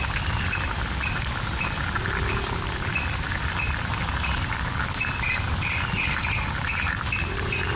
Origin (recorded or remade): recorded